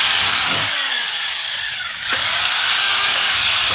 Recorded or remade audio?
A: remade